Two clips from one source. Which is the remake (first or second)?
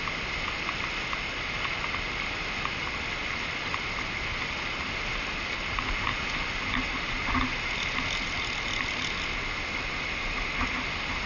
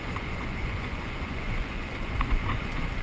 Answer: second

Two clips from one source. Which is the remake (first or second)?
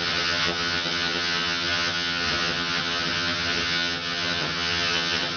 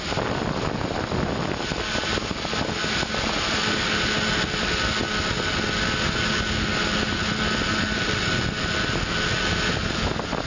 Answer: first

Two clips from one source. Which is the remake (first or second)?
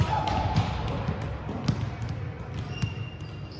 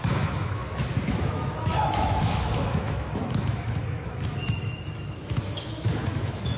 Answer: second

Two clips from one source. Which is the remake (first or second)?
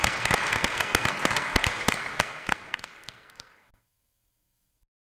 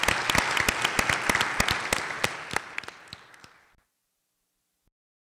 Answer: first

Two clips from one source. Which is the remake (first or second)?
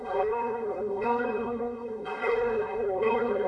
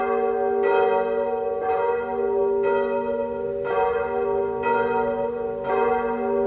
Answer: first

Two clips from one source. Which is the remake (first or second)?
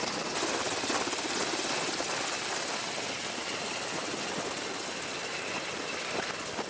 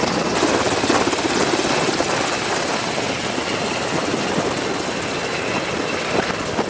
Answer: first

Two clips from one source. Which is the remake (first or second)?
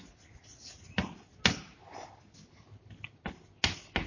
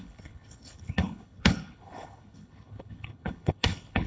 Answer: second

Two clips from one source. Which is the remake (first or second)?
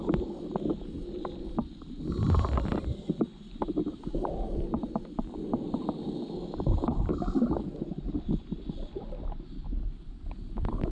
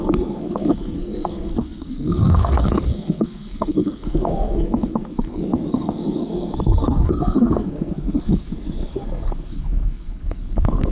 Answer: second